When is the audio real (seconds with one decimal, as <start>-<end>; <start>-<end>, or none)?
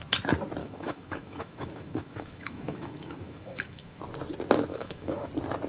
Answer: 0.0-0.6; 4.0-4.7; 5.3-5.7